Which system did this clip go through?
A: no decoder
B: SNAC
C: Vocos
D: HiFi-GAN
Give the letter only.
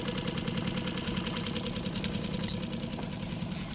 A